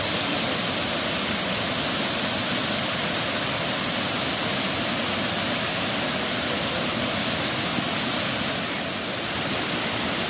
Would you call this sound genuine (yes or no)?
yes